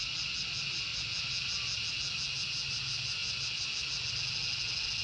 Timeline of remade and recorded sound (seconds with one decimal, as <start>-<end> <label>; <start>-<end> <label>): 0.0-5.0 recorded